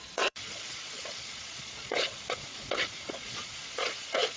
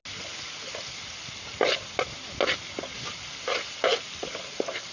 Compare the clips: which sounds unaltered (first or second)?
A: second